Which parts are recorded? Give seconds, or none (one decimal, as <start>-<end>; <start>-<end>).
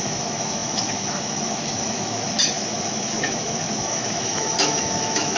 none